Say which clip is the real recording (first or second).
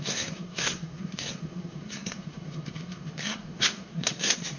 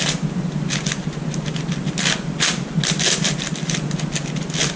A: second